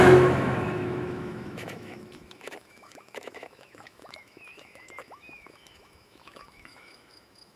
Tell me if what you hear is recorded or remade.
remade